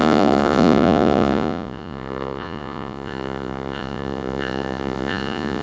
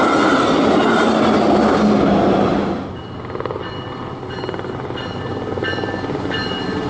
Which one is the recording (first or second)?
second